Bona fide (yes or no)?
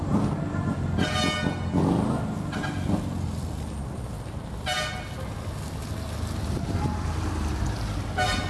yes